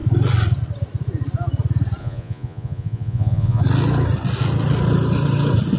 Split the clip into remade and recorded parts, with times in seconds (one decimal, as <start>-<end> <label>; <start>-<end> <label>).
0.0-2.0 recorded; 2.0-3.6 remade; 3.6-5.8 recorded